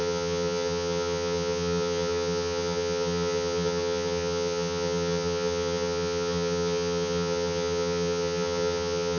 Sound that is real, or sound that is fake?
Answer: fake